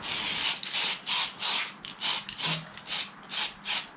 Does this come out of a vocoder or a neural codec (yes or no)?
no